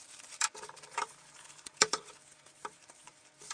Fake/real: fake